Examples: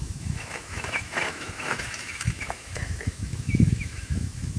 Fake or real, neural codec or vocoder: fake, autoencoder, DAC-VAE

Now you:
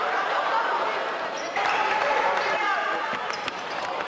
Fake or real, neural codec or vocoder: fake, vocoder, BigVGAN v2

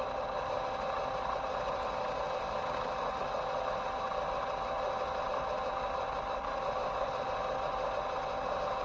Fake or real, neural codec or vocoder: real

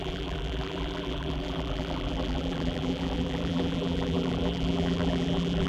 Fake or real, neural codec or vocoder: fake, vocoder, BigVGAN v2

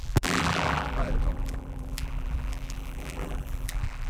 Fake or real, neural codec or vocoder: fake, vocoder, BigVGAN v2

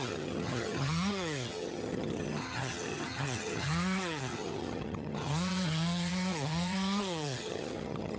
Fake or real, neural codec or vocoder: fake, vocoder, HiFi-GAN